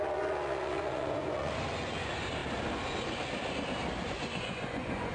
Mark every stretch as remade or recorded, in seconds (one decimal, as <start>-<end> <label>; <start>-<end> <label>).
0.0-2.4 remade; 2.4-4.1 recorded; 4.1-5.1 remade